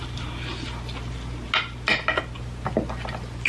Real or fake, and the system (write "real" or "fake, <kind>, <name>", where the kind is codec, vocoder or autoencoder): real